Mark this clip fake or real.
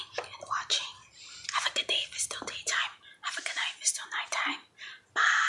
real